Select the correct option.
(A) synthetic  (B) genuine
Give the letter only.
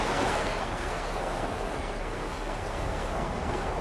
A